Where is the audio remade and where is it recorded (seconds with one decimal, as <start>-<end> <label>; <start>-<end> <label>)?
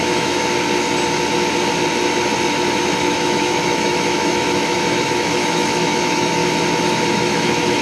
0.0-0.4 remade; 0.4-3.0 recorded; 3.0-6.4 remade; 6.4-7.1 recorded; 7.1-7.8 remade